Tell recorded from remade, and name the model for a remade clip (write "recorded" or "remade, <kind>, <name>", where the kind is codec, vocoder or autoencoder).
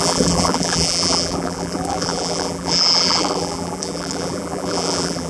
remade, vocoder, BigVGAN v2